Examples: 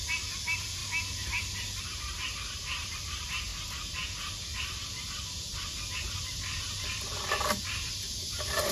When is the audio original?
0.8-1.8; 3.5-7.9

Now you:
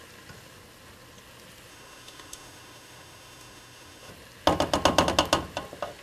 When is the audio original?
0.0-1.7; 4.1-6.0

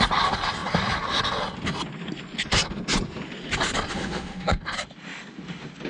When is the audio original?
0.0-3.9; 4.6-5.9

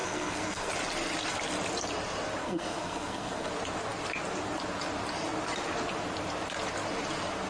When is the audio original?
0.7-2.4; 3.5-7.5

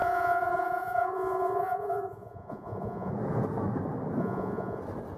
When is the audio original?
3.1-4.2; 4.8-5.2

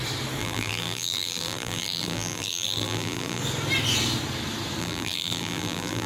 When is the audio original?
0.0-0.4; 3.4-4.8